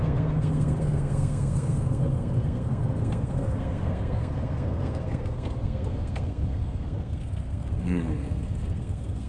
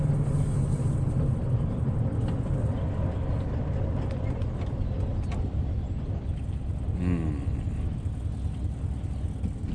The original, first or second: second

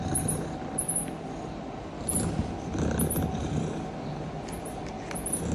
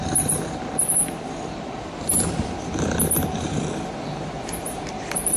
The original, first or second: first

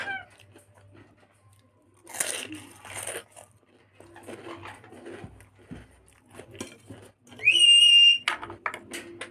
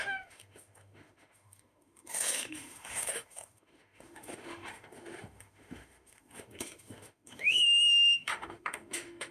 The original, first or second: first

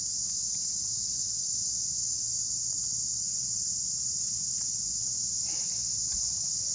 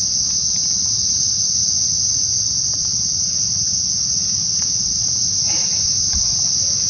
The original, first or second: second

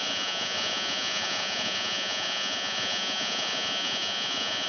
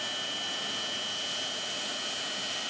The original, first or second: second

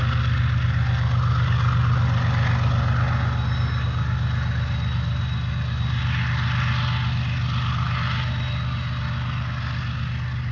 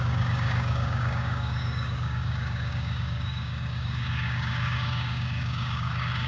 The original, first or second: first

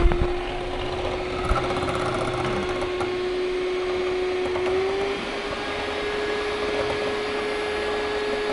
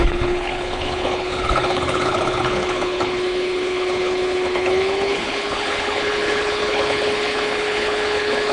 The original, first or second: first